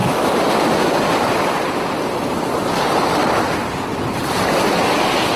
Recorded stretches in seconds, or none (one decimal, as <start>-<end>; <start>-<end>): 2.5-3.2; 4.5-5.4